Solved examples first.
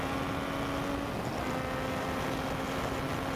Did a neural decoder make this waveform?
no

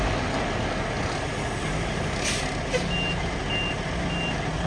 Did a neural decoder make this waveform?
no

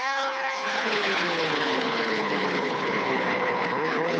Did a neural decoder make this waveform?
yes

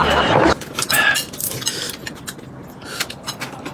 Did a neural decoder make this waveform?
no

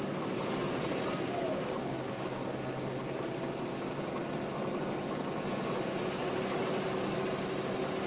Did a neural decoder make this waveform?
no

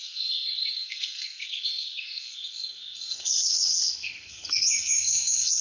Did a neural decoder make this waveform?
yes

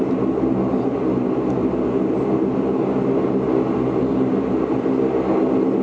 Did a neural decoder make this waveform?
no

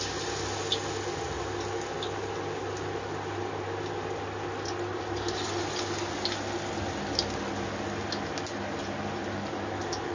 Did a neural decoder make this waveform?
no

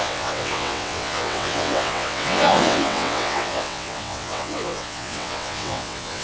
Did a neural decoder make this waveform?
yes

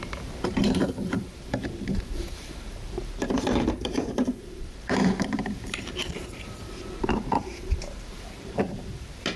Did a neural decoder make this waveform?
yes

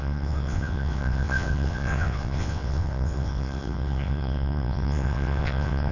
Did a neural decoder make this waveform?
yes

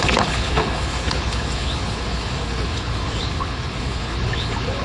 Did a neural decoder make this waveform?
yes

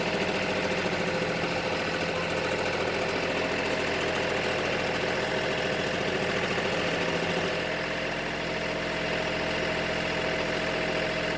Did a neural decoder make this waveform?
no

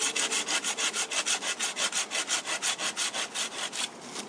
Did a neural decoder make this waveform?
no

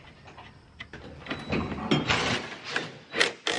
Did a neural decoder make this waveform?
no